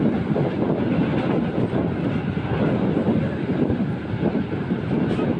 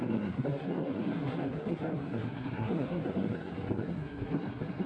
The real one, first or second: first